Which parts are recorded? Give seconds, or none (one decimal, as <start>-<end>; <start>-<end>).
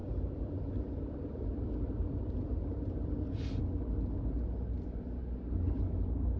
3.6-6.4